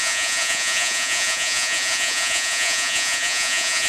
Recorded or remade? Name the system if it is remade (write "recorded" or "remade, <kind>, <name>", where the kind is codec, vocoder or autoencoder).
remade, vocoder, Vocos